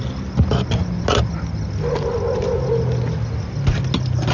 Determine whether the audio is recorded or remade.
recorded